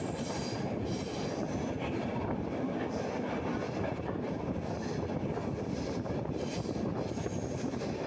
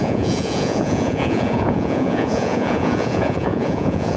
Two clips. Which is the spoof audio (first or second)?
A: second